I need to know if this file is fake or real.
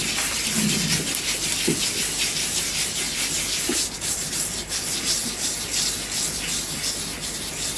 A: real